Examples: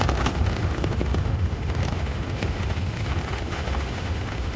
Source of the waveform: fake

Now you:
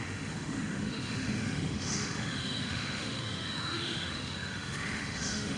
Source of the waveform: fake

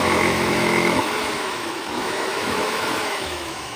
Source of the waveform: fake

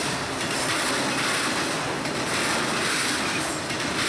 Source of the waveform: real